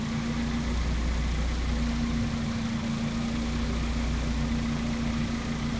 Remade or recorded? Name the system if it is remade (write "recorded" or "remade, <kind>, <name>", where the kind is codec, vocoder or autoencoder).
recorded